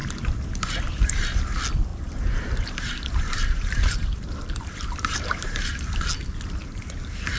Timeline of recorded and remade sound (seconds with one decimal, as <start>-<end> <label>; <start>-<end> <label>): 0.0-0.8 remade; 0.8-1.9 recorded; 1.9-5.8 remade; 5.8-7.4 recorded